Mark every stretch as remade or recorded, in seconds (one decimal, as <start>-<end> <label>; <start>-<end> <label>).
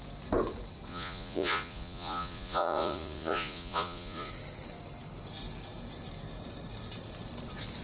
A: 0.0-0.9 recorded; 0.9-4.3 remade; 4.3-7.8 recorded